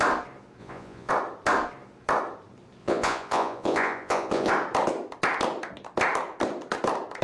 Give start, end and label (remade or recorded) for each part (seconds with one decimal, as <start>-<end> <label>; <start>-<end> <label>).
0.0-0.6 recorded; 0.6-1.1 remade; 1.1-2.8 recorded; 2.8-4.5 remade; 4.5-7.2 recorded